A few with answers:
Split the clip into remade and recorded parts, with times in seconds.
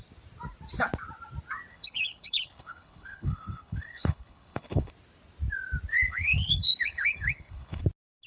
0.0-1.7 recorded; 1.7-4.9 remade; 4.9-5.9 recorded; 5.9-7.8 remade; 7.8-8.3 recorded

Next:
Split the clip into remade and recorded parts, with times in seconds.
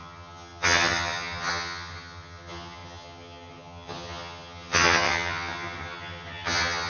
0.0-6.9 remade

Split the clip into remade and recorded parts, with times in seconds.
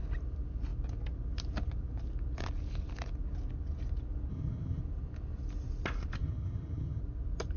0.0-4.3 recorded; 4.3-4.8 remade; 4.8-6.2 recorded; 6.2-7.0 remade; 7.0-7.6 recorded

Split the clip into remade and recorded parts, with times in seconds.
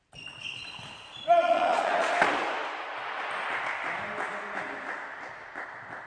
0.0-1.1 recorded; 1.1-1.9 remade; 1.9-6.1 recorded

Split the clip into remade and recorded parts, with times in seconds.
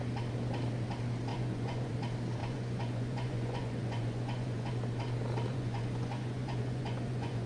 0.0-1.3 recorded; 1.3-1.9 remade; 1.9-2.4 recorded; 2.4-4.7 remade; 4.7-5.5 recorded; 5.5-7.5 remade